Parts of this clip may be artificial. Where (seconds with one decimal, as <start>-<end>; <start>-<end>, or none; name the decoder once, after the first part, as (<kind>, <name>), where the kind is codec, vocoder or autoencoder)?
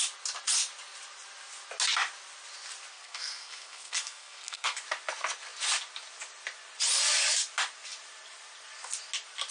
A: 2.9-4.8 (codec, SNAC)